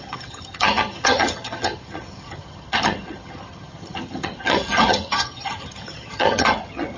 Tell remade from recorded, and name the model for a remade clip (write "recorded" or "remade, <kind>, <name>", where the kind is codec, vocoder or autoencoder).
remade, vocoder, HiFi-GAN